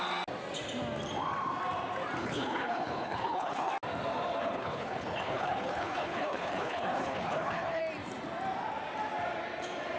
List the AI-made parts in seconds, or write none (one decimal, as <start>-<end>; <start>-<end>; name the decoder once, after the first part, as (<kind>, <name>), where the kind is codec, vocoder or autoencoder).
2.2-3.7 (codec, HILCodec); 4.4-7.8